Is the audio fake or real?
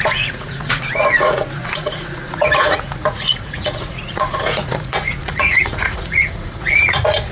fake